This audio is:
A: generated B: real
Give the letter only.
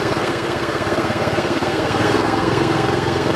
A